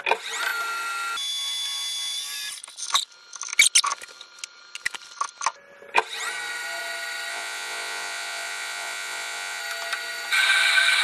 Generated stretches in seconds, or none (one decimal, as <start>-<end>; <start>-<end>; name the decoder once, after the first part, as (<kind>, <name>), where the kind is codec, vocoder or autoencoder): 7.3-9.6 (vocoder, Vocos)

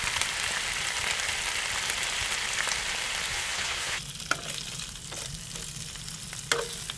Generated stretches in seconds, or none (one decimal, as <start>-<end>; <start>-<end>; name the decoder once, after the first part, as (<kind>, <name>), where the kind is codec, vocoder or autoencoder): 3.3-4.0 (vocoder, Vocos)

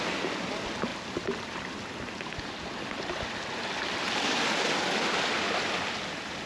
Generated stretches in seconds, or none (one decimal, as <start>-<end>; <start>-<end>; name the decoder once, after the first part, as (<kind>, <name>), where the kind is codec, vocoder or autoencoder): none

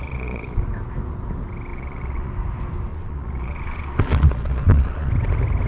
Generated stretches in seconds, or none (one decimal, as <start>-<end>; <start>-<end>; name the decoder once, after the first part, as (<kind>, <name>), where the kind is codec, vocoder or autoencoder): 0.0-0.6 (vocoder, Vocos); 1.7-2.3; 2.9-5.1

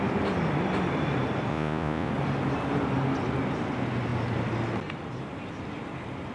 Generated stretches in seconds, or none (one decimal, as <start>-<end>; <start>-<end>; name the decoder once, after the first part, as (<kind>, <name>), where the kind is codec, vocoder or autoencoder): 1.5-2.1 (vocoder, Vocos)

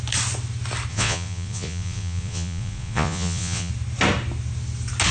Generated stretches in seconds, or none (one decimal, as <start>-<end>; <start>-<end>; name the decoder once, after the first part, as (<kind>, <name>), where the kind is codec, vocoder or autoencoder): 0.9-3.7 (vocoder, Vocos)

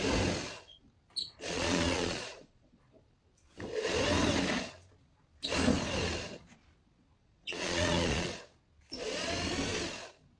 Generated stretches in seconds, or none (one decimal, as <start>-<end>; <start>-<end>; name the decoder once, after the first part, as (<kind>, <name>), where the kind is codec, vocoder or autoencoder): 1.2-2.8 (vocoder, Vocos); 7.2-8.3